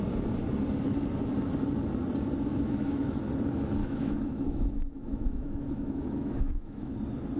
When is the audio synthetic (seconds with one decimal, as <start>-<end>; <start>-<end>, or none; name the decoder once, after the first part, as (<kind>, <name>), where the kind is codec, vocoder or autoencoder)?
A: 2.5-3.2 (autoencoder, DAC-VAE); 3.8-7.0

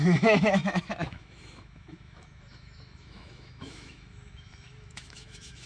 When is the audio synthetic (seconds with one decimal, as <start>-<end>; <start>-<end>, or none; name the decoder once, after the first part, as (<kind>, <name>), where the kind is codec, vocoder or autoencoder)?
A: 0.0-5.7 (autoencoder, DAC-VAE)

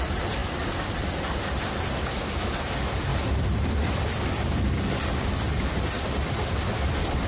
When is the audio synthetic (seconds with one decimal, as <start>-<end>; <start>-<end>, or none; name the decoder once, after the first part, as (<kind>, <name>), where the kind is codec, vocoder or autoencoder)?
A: 0.0-0.4 (vocoder, BigVGAN v2); 2.6-7.3

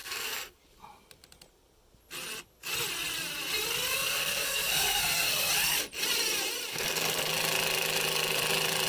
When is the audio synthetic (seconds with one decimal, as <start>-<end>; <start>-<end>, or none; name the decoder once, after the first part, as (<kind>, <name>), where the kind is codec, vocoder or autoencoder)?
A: 0.0-0.6 (codec, SNAC); 3.9-5.5; 6.7-7.3

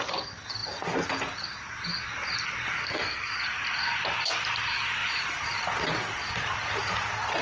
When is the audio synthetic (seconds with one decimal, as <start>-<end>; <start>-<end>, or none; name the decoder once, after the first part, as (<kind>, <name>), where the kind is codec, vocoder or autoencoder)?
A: 2.8-3.3 (codec, SNAC)